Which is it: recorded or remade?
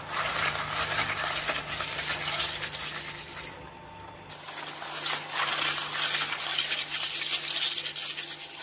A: recorded